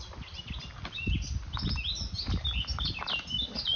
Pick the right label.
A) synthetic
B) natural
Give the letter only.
B